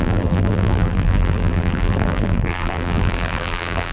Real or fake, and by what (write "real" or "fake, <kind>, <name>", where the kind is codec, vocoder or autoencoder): fake, vocoder, BigVGAN v2